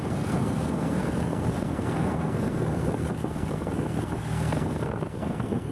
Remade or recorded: remade